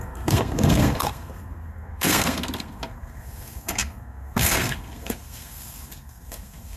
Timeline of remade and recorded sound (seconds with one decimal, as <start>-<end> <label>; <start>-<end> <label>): 0.0-6.8 remade